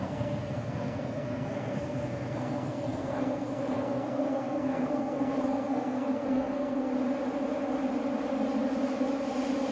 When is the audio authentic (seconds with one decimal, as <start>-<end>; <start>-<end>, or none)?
6.9-9.7